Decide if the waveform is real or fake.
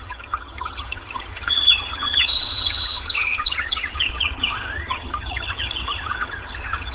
fake